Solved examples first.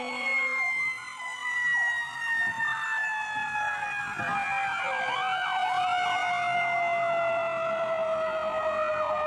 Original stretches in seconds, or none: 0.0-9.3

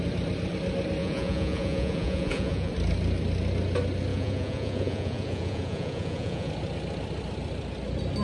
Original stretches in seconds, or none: 0.0-1.0; 2.7-4.1; 6.5-8.2

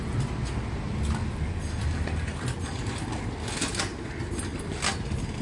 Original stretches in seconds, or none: 0.0-5.4